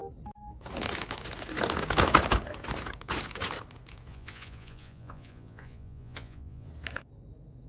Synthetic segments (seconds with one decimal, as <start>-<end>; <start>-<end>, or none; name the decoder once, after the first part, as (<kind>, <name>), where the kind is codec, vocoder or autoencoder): 4.1-6.7 (vocoder, Vocos)